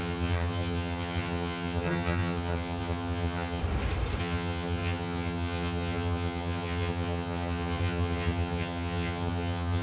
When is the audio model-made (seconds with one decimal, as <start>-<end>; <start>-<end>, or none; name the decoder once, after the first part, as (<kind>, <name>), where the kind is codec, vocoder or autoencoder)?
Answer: 0.0-3.6 (vocoder, HiFi-GAN); 4.2-9.8